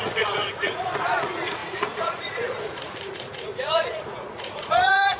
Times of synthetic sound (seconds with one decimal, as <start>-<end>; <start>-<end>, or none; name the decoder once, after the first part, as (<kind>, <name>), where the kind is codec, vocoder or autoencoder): 0.0-5.2 (vocoder, Vocos)

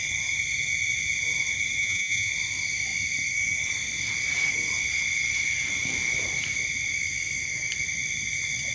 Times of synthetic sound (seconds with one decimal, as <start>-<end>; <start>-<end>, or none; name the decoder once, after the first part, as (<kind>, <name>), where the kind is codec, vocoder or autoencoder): 1.8-2.3 (vocoder, Vocos)

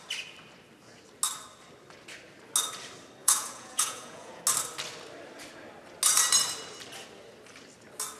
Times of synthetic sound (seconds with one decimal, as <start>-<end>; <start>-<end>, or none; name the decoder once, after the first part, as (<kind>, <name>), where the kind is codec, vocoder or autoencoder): 3.2-4.4 (vocoder, Vocos)

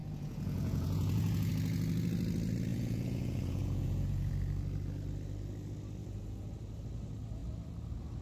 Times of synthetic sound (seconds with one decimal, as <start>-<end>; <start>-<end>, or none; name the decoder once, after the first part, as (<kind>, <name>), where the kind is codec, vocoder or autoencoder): 0.0-1.5 (vocoder, Vocos); 2.7-4.3; 6.0-6.5

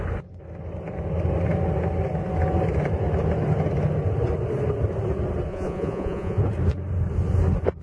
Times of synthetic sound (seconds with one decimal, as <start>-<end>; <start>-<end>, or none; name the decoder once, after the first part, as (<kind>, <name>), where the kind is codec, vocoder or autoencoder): 5.5-6.4 (vocoder, Vocos)